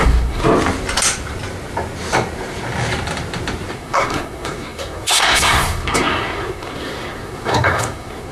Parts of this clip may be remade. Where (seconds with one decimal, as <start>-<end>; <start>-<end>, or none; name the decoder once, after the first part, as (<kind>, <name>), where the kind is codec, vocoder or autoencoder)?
0.0-0.4 (codec, SNAC); 3.7-8.3